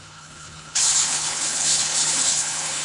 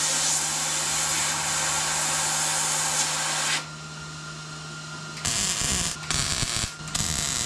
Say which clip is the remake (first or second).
first